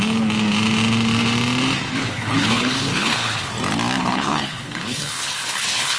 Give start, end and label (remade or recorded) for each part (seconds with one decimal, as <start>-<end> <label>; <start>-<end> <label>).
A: 0.0-2.0 recorded; 2.0-3.5 remade; 3.5-4.0 recorded; 4.0-6.0 remade